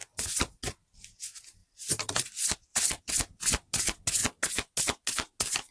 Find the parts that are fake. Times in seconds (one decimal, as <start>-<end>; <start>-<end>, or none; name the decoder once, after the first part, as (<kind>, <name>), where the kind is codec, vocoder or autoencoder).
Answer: 1.6-3.0 (vocoder, BigVGAN v2)